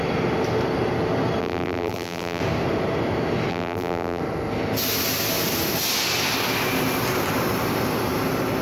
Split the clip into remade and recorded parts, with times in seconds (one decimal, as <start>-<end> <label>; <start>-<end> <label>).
0.0-1.4 recorded; 1.4-2.4 remade; 2.4-3.5 recorded; 3.5-4.2 remade; 4.2-8.6 recorded